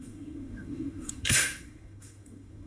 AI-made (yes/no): yes